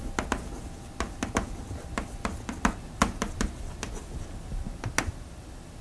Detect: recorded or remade recorded